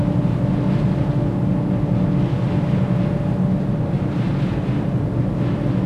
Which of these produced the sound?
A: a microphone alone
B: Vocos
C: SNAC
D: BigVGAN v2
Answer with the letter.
A